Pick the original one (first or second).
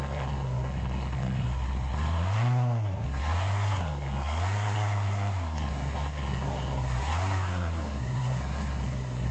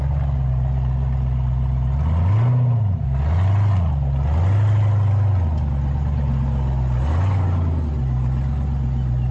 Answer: second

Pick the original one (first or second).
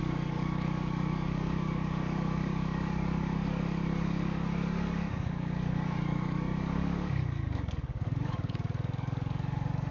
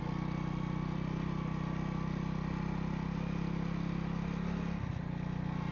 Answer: second